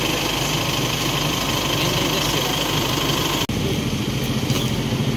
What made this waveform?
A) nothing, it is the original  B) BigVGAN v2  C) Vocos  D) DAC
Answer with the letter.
A